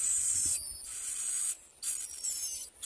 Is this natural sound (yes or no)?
yes